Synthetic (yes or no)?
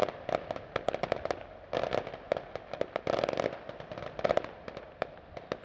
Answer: no